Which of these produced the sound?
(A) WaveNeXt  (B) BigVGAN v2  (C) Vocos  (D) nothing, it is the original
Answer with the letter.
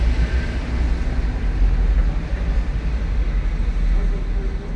D